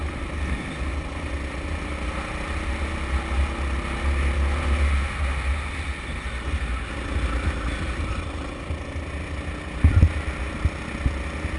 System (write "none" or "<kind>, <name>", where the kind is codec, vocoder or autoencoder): none